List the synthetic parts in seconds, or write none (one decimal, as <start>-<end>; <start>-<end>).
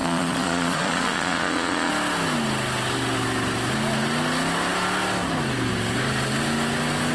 0.0-1.9